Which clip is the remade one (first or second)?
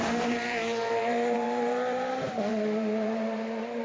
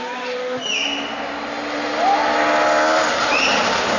first